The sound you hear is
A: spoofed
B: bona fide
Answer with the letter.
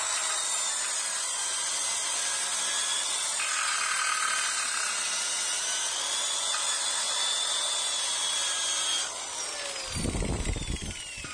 B